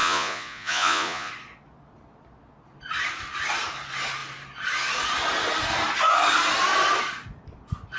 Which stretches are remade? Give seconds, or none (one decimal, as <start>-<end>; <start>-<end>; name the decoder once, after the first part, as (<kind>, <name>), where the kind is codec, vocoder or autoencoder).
0.0-1.3 (vocoder, Vocos)